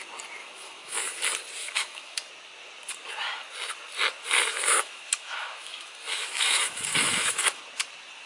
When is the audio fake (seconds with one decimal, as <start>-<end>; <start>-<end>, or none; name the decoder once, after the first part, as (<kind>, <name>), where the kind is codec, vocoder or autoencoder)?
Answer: 0.4-1.2 (autoencoder, DAC-VAE); 1.6-2.3; 4.5-7.6